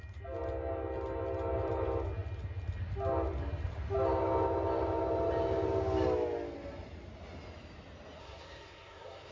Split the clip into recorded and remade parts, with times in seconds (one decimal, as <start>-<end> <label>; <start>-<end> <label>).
0.0-8.2 recorded; 8.2-9.3 remade